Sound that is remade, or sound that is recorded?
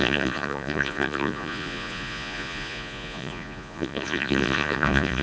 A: remade